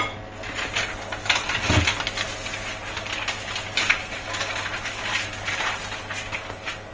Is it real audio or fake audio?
real